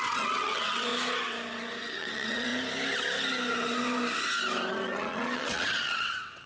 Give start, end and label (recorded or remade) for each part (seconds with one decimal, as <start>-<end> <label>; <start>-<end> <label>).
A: 0.0-0.9 remade; 0.9-1.9 recorded; 1.9-2.5 remade; 2.5-4.7 recorded; 4.7-6.5 remade